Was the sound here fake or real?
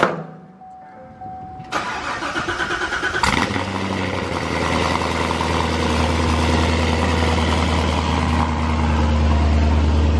real